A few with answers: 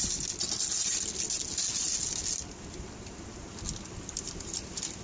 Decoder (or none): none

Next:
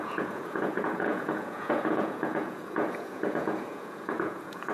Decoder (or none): vocoder, Vocos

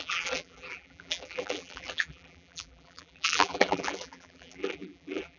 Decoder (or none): vocoder, BigVGAN v2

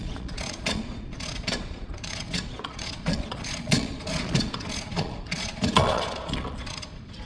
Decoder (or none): vocoder, Vocos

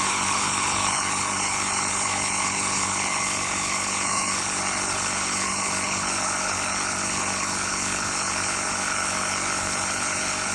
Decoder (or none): codec, HILCodec